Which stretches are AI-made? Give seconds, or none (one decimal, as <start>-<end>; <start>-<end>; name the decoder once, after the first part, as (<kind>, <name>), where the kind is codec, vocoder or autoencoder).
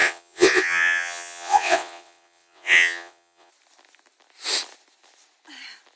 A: 0.0-3.5 (vocoder, WaveNeXt)